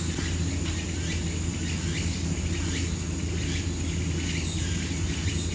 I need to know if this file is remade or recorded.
recorded